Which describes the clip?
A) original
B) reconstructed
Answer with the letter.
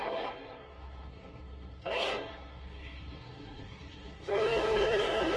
B